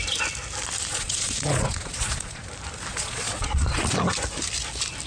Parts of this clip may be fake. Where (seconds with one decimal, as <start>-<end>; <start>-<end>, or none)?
0.9-2.4; 2.9-3.9